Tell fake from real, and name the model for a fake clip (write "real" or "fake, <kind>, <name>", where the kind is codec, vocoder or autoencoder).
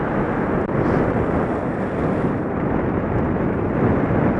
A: real